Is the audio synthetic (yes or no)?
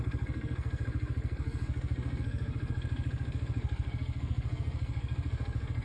yes